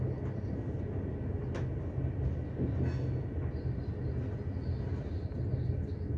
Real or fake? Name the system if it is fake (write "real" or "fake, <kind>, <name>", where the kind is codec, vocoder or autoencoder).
real